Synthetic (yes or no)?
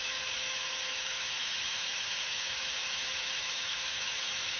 yes